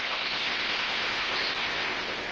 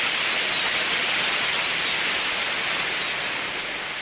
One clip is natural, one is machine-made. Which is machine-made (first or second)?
first